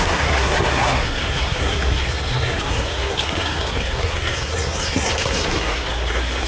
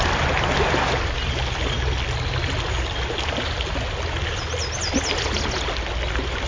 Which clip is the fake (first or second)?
first